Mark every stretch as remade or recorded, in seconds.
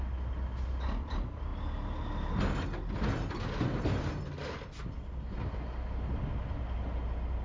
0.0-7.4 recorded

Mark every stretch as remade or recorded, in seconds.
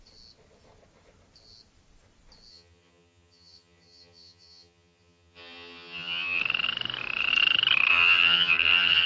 0.0-2.5 recorded; 2.5-6.4 remade; 6.4-7.9 recorded; 7.9-9.1 remade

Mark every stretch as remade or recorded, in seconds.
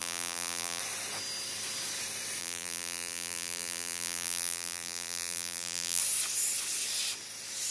0.0-0.8 remade; 0.8-2.4 recorded; 2.4-6.0 remade; 6.0-7.7 recorded